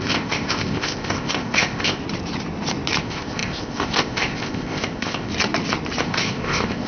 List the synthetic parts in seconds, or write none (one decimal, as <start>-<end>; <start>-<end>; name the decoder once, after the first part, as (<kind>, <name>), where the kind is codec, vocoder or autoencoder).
0.0-2.0 (codec, ZipCodec); 3.0-5.3; 6.0-6.9